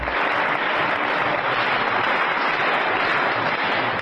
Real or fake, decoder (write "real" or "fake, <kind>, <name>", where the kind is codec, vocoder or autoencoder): real